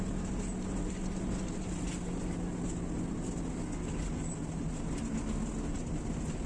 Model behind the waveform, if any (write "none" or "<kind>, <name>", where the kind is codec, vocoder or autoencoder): none